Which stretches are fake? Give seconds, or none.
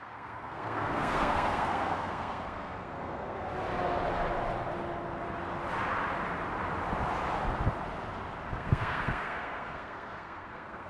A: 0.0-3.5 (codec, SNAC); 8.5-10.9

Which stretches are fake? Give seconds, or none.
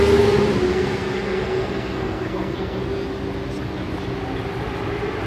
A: 0.7-2.8 (codec, SNAC)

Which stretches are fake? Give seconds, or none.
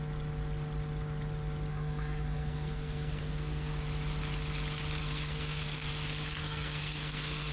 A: 1.7-3.7 (codec, SNAC); 5.0-5.9; 6.4-7.5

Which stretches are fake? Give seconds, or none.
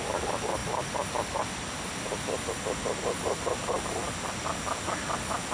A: none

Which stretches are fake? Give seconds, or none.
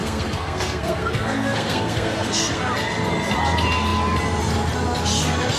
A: 0.0-2.6 (codec, SNAC)